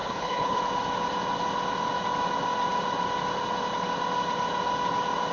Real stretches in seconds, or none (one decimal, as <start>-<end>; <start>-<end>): 0.6-5.3